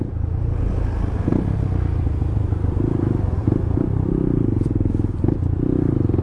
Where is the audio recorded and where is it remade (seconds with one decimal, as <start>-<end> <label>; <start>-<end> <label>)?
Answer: 0.0-3.4 recorded; 3.4-4.9 remade; 4.9-6.2 recorded